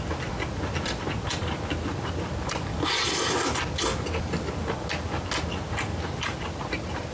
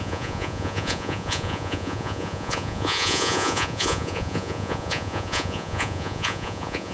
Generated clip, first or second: second